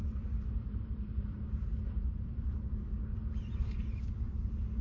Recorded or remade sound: remade